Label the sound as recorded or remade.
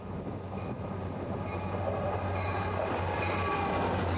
recorded